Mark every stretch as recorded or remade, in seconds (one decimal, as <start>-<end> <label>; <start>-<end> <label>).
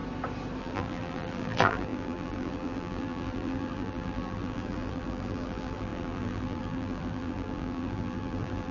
0.0-0.6 recorded; 0.6-8.7 remade